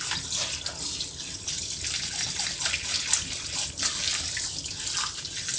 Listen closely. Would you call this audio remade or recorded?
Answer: recorded